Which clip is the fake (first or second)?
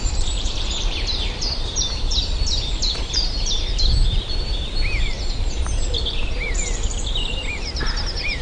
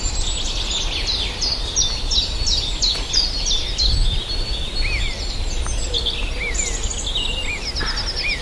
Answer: first